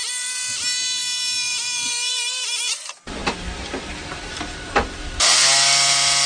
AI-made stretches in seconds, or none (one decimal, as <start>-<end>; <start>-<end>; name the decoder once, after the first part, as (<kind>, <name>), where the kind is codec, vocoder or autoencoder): 0.0-5.3 (vocoder, BigVGAN v2)